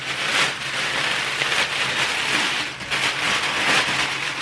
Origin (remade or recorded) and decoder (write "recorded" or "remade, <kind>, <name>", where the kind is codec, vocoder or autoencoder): remade, vocoder, BigVGAN v2